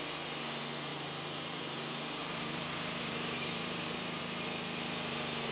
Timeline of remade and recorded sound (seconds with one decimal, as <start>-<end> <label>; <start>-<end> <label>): 0.0-0.9 recorded; 0.9-4.2 remade; 4.2-5.5 recorded